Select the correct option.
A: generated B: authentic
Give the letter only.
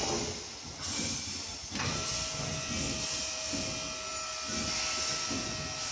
B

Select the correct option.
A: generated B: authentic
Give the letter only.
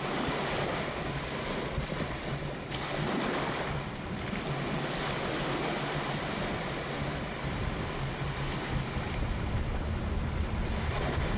B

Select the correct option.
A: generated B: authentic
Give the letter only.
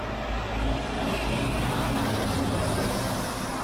B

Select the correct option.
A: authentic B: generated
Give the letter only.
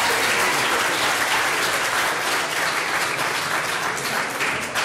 B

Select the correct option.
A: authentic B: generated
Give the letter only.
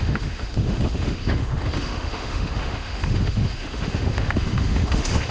B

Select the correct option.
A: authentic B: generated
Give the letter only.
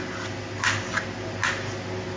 A